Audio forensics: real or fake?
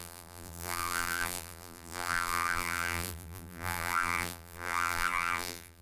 fake